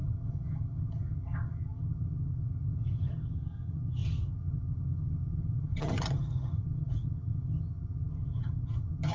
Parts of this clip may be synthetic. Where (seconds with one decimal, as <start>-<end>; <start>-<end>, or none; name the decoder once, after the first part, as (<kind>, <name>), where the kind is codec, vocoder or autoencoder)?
0.0-9.1 (vocoder, HiFi-GAN)